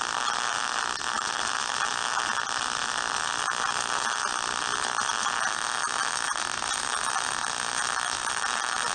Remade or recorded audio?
recorded